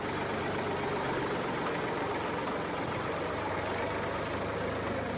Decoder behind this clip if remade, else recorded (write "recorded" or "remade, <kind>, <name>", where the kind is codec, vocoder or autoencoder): recorded